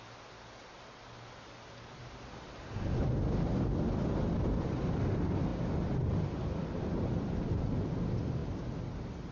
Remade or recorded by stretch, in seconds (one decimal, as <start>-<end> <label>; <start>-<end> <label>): 0.0-9.3 recorded

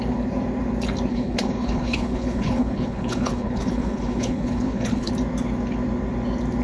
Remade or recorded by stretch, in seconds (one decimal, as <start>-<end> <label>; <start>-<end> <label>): 0.0-1.1 recorded; 1.1-5.1 remade; 5.1-6.6 recorded

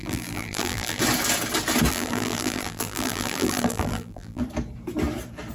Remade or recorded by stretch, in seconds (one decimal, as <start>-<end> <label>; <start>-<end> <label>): 0.0-1.0 remade; 1.0-1.9 recorded; 1.9-4.4 remade; 4.4-5.5 recorded

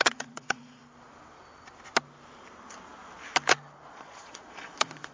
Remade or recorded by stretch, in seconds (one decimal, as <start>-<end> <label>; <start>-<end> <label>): 0.0-0.8 remade; 0.8-3.9 recorded; 3.9-5.1 remade